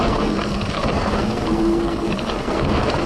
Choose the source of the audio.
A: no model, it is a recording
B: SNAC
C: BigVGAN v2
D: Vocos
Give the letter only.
B